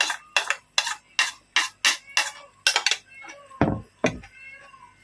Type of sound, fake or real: real